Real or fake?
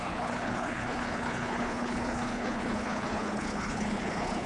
fake